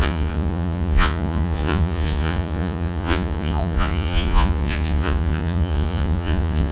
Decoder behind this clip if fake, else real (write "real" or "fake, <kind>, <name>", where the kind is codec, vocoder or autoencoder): fake, vocoder, Vocos